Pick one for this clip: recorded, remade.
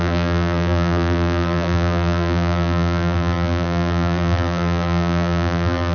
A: remade